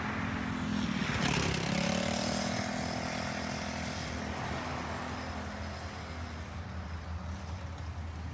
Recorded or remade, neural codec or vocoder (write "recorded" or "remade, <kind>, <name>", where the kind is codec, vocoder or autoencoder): recorded